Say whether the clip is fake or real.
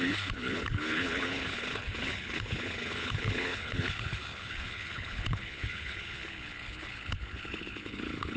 fake